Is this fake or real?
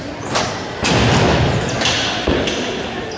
real